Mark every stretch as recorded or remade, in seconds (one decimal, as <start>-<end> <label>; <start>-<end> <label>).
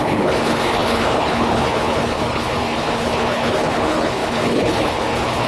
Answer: 0.0-5.5 remade